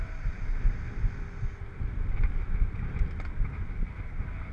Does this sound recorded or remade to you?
recorded